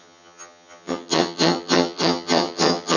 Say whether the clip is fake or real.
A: fake